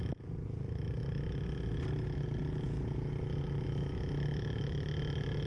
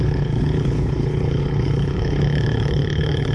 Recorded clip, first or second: first